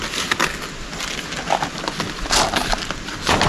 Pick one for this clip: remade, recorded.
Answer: recorded